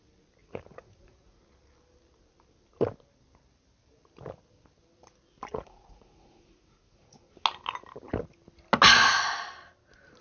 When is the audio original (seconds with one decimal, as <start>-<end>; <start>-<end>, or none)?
0.0-0.4; 1.4-5.5; 7.3-10.2